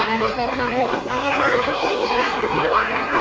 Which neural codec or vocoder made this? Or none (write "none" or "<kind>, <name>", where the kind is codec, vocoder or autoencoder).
codec, SNAC